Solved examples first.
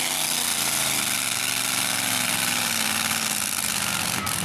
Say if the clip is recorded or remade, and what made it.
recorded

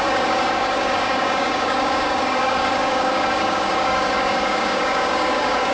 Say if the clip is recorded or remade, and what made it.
remade, codec, DAC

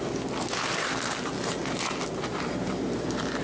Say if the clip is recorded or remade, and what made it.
recorded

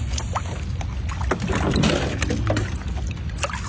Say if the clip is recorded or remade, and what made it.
recorded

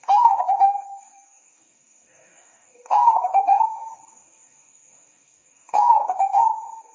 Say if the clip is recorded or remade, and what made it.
remade, codec, DAC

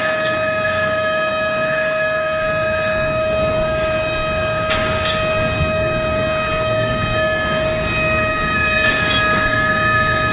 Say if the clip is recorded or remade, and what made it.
remade, codec, DAC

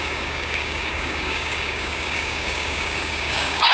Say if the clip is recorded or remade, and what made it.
remade, codec, DAC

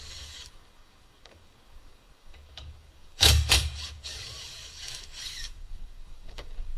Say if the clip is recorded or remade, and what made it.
remade, codec, DAC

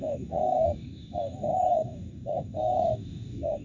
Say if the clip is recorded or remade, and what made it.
remade, codec, DAC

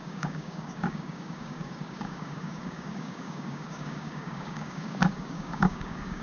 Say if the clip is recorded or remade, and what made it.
remade, codec, DAC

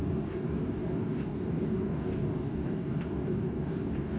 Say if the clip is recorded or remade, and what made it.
remade, codec, DAC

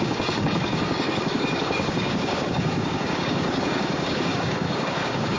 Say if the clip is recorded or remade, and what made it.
remade, codec, DAC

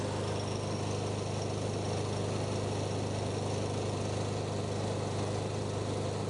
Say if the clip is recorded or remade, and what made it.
recorded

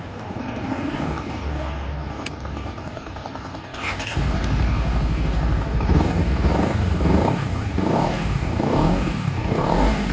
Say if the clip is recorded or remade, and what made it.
remade, codec, DAC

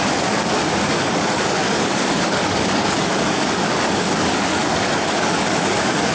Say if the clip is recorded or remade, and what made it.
remade, codec, DAC